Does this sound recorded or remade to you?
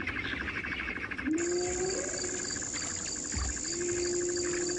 recorded